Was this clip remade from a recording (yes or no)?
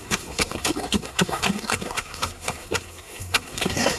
yes